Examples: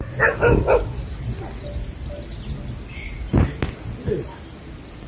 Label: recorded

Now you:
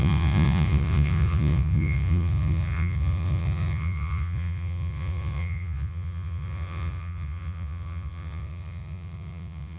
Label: remade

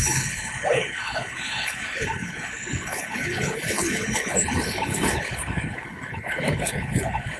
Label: remade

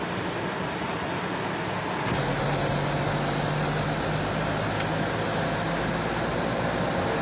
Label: recorded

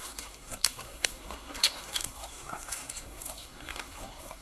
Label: remade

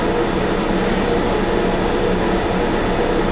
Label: recorded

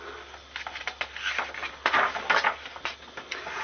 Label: recorded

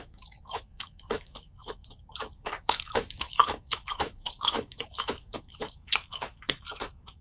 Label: remade